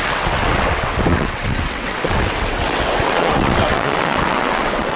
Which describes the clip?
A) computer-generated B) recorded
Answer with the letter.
A